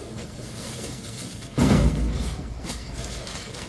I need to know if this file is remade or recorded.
remade